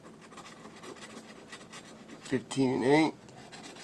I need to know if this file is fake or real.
real